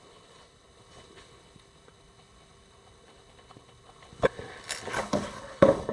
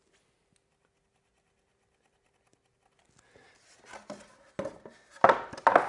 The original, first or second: second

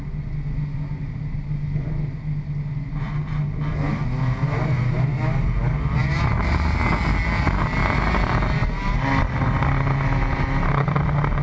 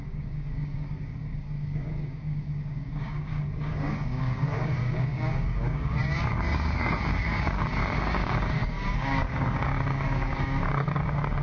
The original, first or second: first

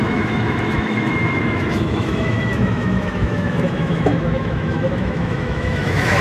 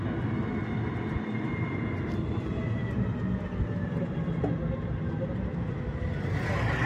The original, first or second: second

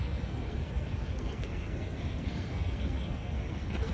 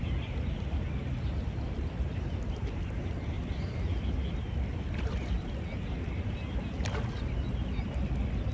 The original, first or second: second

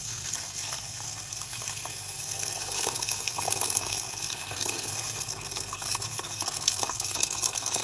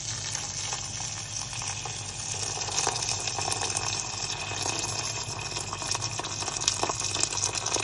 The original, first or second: second